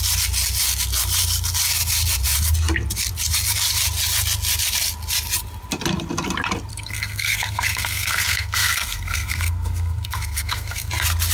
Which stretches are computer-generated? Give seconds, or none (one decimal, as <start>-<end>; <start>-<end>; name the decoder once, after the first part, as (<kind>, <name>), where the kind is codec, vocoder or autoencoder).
6.7-10.9 (codec, SNAC)